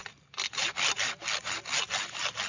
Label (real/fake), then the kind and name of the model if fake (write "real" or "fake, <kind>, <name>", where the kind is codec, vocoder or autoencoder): real